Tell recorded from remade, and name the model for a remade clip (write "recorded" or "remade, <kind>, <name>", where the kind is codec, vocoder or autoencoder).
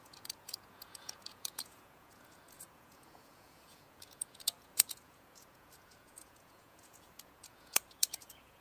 remade, vocoder, Vocos